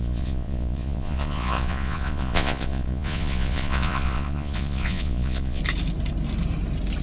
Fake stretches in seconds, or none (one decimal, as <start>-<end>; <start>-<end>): 0.0-5.6